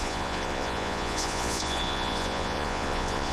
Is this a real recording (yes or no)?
no